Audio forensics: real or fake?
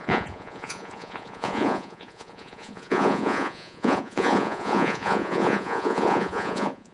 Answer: fake